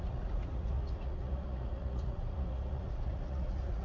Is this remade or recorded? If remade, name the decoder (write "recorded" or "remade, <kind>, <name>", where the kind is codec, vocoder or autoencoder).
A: remade, vocoder, Vocos